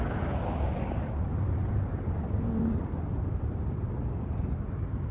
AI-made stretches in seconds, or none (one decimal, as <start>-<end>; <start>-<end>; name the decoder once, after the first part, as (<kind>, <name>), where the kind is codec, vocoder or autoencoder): 1.6-5.1 (vocoder, BigVGAN v2)